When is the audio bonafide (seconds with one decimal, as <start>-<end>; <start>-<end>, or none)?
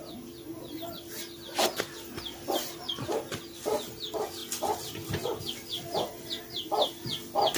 0.0-7.6